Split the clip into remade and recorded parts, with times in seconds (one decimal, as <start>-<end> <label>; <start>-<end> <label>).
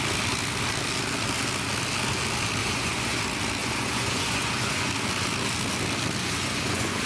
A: 0.0-2.6 recorded; 2.6-3.2 remade; 3.2-3.6 recorded; 3.6-4.9 remade; 4.9-6.2 recorded; 6.2-7.1 remade